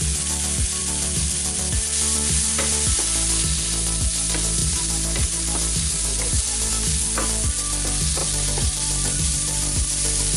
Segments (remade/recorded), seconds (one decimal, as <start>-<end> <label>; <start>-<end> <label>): 0.0-0.8 recorded; 0.8-1.6 remade; 1.6-4.6 recorded; 4.6-6.7 remade; 6.7-8.2 recorded; 8.2-10.4 remade